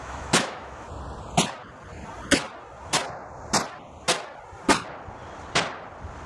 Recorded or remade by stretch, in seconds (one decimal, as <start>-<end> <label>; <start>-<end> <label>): 0.0-0.9 remade; 0.9-6.3 recorded